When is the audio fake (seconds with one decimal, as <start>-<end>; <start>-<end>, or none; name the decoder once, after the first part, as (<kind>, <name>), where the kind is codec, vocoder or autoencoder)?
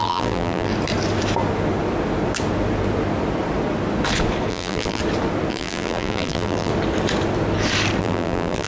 0.0-0.7 (vocoder, BigVGAN v2); 4.5-5.0; 5.5-6.7; 8.0-8.7